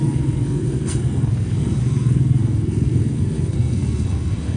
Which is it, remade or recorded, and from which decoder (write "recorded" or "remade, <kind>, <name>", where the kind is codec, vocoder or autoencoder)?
remade, codec, SNAC